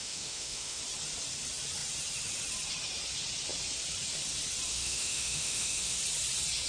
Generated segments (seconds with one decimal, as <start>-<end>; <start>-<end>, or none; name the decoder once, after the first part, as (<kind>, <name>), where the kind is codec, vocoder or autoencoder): 0.0-0.8 (autoencoder, DAC-VAE); 4.7-6.0